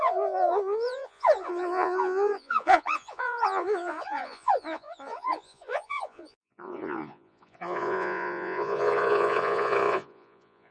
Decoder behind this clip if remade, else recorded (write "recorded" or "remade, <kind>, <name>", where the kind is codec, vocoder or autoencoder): remade, vocoder, Vocos